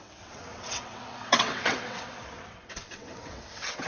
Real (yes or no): no